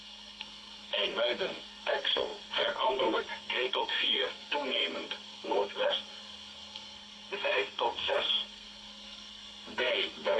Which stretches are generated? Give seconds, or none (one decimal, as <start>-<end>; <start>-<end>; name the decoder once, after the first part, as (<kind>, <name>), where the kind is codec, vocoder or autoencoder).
0.0-10.4 (codec, SNAC)